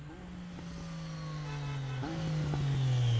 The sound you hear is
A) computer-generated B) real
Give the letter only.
B